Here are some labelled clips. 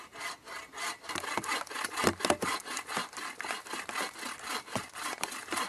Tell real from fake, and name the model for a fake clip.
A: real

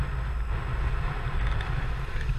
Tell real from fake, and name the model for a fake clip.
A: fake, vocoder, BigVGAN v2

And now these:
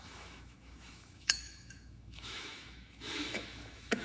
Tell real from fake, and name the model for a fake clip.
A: fake, autoencoder, DAC-VAE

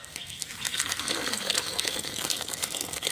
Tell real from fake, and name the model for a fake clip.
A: fake, codec, SNAC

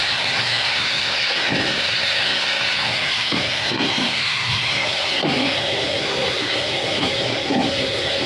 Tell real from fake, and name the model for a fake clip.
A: fake, codec, SNAC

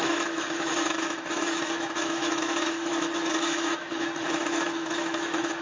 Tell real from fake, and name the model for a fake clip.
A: fake, autoencoder, DAC-VAE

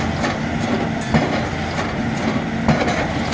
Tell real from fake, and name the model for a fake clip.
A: real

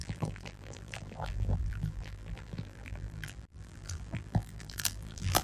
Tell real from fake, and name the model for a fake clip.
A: fake, vocoder, BigVGAN v2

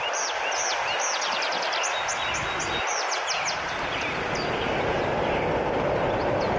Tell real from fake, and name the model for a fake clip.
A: real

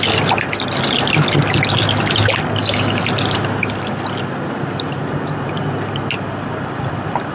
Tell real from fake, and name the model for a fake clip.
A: real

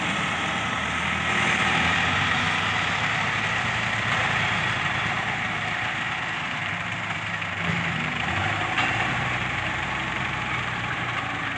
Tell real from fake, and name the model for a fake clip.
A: fake, vocoder, BigVGAN v2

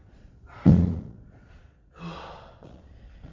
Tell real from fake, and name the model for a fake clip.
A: fake, vocoder, Vocos